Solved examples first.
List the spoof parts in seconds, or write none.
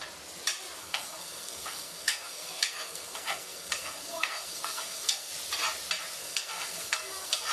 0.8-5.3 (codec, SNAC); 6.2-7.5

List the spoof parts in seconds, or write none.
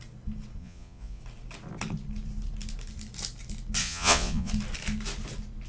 0.6-1.2 (vocoder, Vocos); 3.8-4.5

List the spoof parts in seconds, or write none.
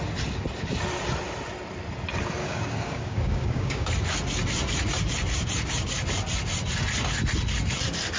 2.4-3.9 (codec, DAC)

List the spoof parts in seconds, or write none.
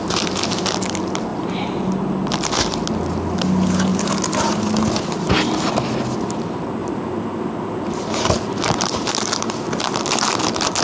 1.3-1.9 (vocoder, BigVGAN v2); 3.9-4.5; 6.8-10.8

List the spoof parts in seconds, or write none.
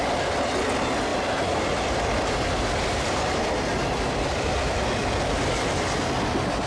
1.1-5.1 (vocoder, BigVGAN v2)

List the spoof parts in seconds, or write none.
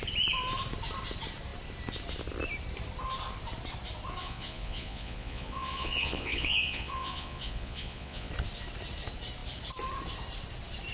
4.2-8.3 (vocoder, Vocos)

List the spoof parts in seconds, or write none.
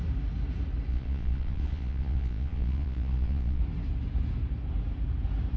0.9-3.6 (vocoder, Vocos)